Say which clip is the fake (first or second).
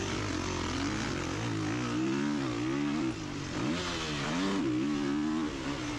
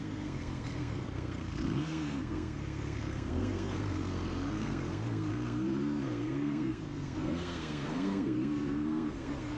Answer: second